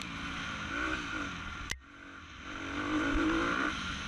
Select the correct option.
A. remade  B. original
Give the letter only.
B